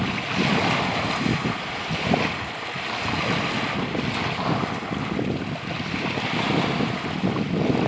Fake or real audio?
real